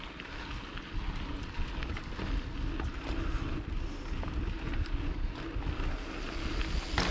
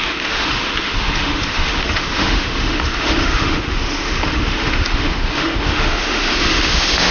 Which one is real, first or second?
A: first